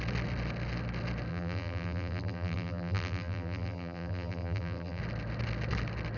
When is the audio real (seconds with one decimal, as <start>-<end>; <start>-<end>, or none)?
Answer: 0.0-1.3; 5.0-6.2